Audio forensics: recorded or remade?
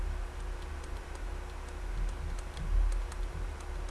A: recorded